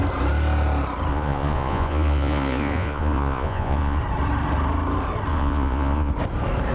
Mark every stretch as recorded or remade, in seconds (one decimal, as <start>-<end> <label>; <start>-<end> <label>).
0.0-1.1 recorded; 1.1-4.0 remade; 4.0-5.3 recorded; 5.3-6.1 remade; 6.1-6.7 recorded